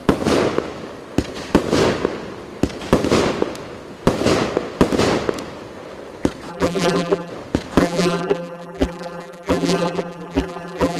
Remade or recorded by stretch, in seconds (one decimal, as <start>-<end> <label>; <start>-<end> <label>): 0.0-6.5 recorded; 6.5-7.3 remade; 7.3-7.8 recorded; 7.8-11.0 remade